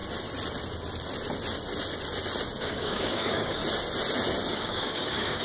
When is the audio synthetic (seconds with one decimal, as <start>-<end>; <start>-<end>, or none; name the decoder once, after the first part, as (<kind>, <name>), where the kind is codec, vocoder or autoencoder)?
2.6-3.6 (codec, DAC); 4.5-5.4